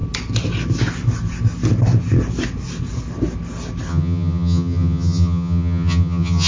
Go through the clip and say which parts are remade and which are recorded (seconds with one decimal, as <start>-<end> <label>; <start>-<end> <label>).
0.0-3.9 recorded; 3.9-6.5 remade